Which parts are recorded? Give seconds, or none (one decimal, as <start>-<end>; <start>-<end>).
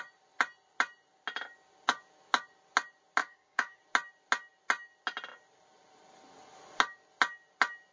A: 0.0-3.2; 3.8-7.9